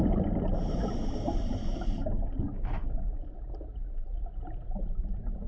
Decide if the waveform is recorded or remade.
recorded